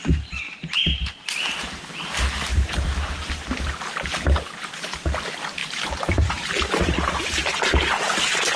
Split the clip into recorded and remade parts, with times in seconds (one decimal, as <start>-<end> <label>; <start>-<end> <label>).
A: 0.0-1.8 remade; 1.8-2.5 recorded; 2.5-3.3 remade; 3.3-5.6 recorded; 5.6-7.1 remade; 7.1-8.6 recorded